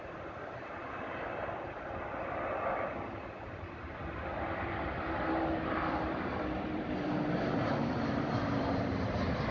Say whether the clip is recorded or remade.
remade